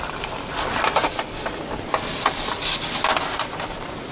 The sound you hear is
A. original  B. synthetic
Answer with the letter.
A